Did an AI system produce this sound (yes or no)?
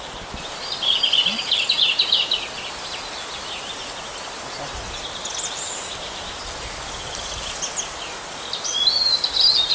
no